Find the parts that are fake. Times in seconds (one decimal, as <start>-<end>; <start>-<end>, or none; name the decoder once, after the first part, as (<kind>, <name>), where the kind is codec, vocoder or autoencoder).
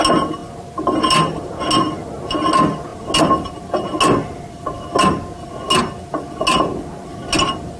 none